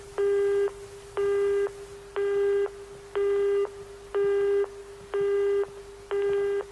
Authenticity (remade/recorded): recorded